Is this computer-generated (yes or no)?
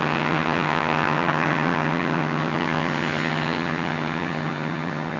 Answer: yes